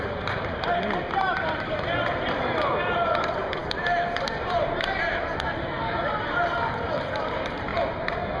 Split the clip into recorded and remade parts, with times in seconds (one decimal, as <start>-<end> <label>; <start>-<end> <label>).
0.0-7.7 remade; 7.7-8.4 recorded